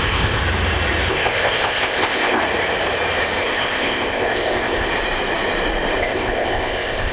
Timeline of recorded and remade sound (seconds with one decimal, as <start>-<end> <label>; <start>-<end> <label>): 0.0-0.4 remade; 0.4-1.1 recorded; 1.1-2.4 remade; 2.4-3.4 recorded; 3.4-4.9 remade; 4.9-6.0 recorded; 6.0-7.1 remade